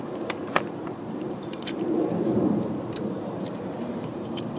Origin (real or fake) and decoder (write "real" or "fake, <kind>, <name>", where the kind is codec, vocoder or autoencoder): fake, vocoder, BigVGAN v2